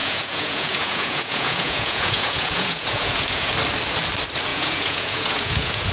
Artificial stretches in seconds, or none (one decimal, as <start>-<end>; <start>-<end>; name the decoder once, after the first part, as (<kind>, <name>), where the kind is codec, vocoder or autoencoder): 0.0-3.5 (vocoder, Vocos); 4.5-5.9

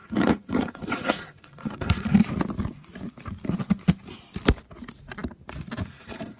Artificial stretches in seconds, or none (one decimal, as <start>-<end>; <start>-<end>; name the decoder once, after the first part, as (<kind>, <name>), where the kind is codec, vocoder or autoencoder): 0.0-2.1 (vocoder, Vocos); 5.9-6.4

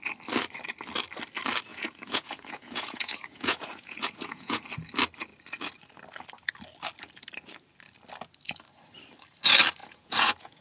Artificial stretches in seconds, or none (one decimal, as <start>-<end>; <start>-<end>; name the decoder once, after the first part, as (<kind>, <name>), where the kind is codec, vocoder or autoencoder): 1.7-4.6 (vocoder, Vocos); 9.8-10.6

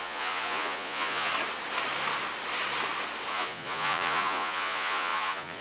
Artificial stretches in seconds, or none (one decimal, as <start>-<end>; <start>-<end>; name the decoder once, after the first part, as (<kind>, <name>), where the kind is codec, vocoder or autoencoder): 0.0-1.3 (vocoder, Vocos); 3.3-5.6

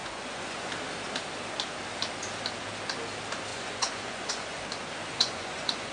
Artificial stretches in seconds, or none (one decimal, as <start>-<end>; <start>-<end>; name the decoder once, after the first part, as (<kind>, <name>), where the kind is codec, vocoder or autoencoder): 0.0-0.7 (vocoder, Vocos); 3.5-4.6; 5.1-5.9

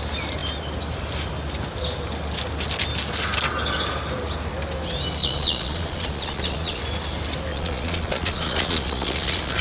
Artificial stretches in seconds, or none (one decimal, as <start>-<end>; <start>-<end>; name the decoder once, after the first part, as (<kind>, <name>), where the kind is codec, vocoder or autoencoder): 5.2-6.8 (vocoder, Vocos); 7.5-9.6